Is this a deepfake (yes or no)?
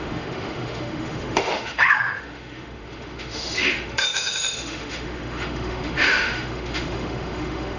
yes